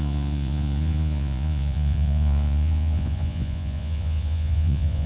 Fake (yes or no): yes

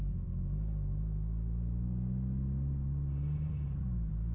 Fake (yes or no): no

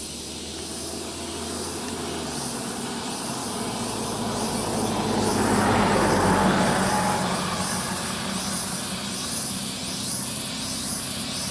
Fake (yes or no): no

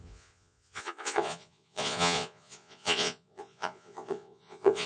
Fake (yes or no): yes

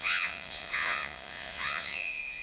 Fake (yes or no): yes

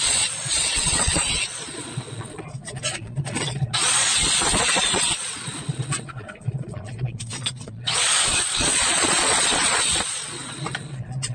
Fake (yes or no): yes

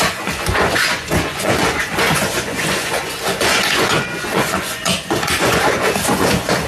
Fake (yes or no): yes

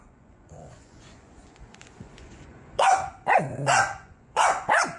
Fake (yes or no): yes